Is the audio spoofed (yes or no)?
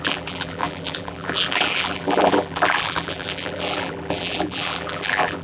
yes